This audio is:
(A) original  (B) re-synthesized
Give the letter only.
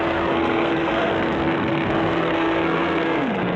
B